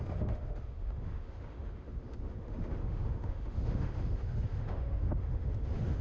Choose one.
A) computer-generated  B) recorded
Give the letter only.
A